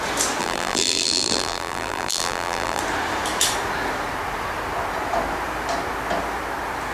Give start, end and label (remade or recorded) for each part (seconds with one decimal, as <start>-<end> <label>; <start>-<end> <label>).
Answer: 0.0-0.4 recorded; 0.4-2.8 remade; 2.8-6.9 recorded